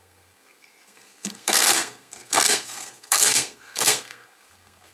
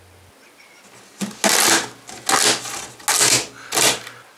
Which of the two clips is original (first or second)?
second